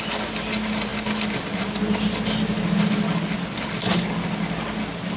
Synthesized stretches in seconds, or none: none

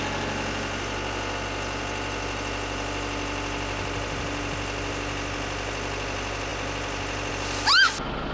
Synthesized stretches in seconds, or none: none

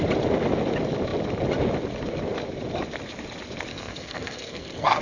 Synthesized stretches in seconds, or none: 3.7-5.0

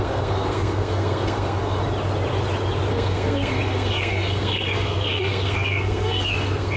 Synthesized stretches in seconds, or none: 0.0-1.8; 2.9-6.8

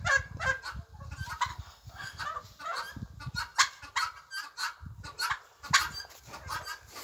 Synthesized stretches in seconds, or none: 1.5-2.2

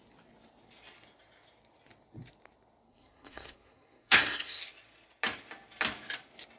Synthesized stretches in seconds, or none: 2.9-4.6